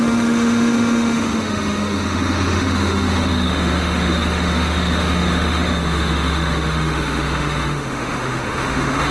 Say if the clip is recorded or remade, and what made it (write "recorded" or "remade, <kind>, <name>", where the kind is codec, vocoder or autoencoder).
remade, autoencoder, DAC-VAE